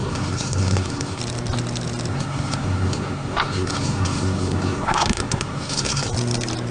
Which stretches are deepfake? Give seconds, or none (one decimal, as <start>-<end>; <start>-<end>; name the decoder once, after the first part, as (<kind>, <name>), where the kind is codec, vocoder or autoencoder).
0.0-1.2 (codec, SNAC); 2.1-6.1